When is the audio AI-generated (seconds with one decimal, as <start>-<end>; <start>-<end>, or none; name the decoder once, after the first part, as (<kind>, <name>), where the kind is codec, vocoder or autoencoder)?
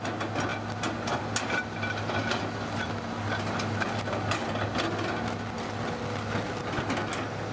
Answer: none